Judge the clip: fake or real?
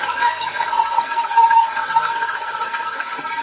fake